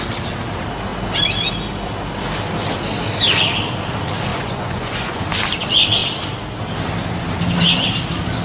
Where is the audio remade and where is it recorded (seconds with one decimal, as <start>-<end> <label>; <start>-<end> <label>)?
0.0-4.3 recorded; 4.3-5.2 remade; 5.2-8.4 recorded